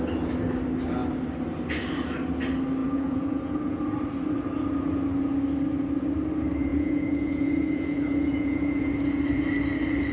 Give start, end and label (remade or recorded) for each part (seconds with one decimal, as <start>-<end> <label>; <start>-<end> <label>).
0.0-2.8 recorded; 2.8-3.8 remade; 3.8-6.7 recorded; 6.7-8.9 remade; 8.9-10.1 recorded